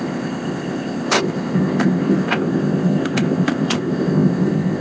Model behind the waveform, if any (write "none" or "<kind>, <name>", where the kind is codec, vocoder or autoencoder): codec, ZipCodec